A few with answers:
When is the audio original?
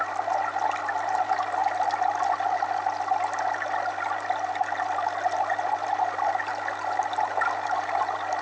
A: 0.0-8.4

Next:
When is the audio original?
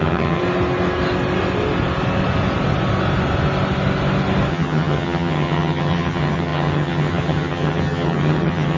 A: 0.4-4.5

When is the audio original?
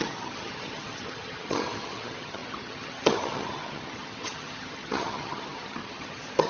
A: none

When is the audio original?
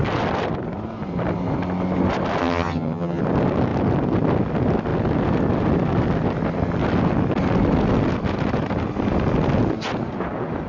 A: 0.0-2.4; 3.2-10.7